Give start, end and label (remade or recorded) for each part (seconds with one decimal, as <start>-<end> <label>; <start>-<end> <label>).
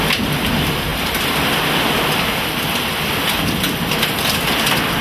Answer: 0.0-5.0 recorded